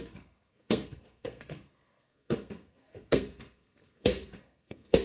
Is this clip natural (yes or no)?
no